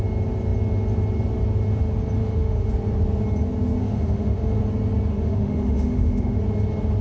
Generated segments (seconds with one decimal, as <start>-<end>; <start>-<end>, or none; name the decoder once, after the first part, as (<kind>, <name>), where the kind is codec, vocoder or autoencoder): 2.2-2.7 (autoencoder, DAC-VAE); 3.8-4.6; 5.1-6.4